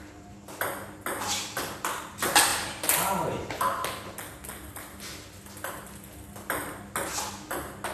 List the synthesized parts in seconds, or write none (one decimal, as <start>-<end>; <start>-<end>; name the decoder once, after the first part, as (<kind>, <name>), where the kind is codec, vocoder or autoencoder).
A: none